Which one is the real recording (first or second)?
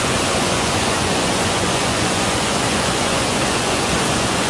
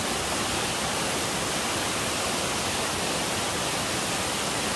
second